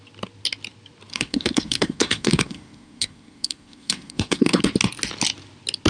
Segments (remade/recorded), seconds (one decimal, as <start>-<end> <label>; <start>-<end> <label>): 0.0-1.1 recorded; 1.1-4.6 remade; 4.6-5.9 recorded